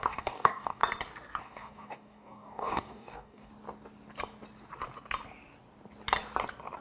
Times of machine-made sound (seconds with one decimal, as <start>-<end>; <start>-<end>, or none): 0.0-0.8; 1.4-3.5